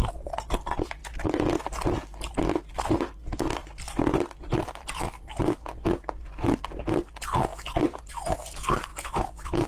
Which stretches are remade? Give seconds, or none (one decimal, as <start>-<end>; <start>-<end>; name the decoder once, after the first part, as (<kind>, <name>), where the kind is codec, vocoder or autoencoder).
8.9-9.7 (autoencoder, DAC-VAE)